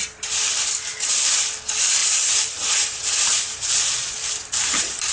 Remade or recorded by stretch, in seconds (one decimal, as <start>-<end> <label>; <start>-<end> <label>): 0.0-2.0 recorded; 2.0-3.7 remade; 3.7-4.2 recorded; 4.2-5.1 remade